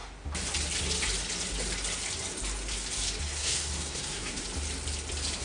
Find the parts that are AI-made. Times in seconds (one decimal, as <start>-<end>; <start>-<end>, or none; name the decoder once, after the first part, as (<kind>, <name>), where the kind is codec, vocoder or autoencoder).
3.2-4.4 (codec, SNAC)